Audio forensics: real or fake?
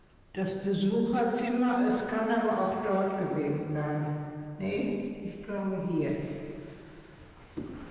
fake